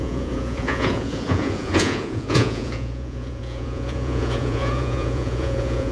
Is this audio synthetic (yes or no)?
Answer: yes